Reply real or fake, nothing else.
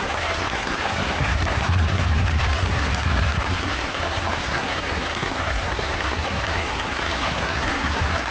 fake